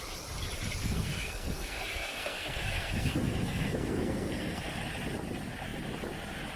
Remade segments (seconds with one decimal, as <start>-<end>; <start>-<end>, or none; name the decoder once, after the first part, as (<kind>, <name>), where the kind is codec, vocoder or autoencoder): 0.8-4.8 (codec, SNAC)

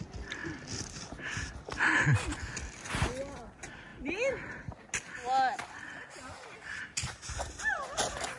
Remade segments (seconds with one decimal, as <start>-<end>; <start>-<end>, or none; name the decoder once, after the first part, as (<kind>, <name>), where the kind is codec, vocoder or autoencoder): none

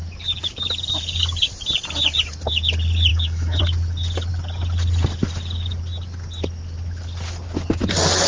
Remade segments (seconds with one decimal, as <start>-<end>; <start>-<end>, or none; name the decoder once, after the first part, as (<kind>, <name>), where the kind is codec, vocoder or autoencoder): 3.1-3.6 (autoencoder, DAC-VAE)